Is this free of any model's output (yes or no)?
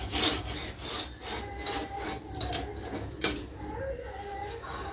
yes